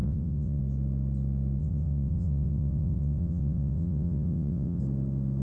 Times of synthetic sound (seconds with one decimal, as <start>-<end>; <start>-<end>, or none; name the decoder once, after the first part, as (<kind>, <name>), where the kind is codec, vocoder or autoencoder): 0.0-0.6 (vocoder, WaveNeXt); 1.6-4.8